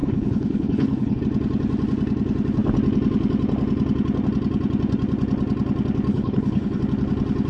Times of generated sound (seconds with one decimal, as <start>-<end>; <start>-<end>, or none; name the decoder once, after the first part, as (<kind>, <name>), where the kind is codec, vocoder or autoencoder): 0.0-1.2 (codec, HILCodec); 6.1-6.8